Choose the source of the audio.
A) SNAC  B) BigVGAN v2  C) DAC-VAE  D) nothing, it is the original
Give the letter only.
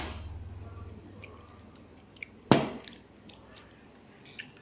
D